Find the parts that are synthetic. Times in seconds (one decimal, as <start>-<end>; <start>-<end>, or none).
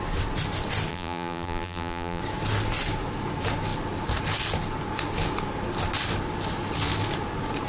0.9-2.2